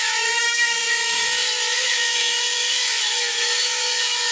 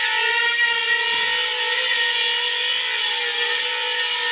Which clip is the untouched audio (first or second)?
second